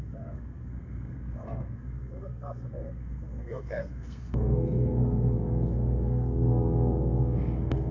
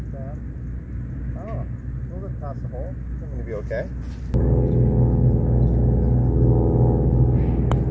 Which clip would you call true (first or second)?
second